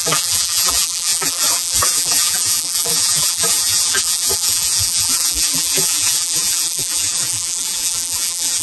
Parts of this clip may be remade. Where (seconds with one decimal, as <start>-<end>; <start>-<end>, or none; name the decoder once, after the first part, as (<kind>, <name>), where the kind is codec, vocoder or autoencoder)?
0.0-8.6 (vocoder, BigVGAN v2)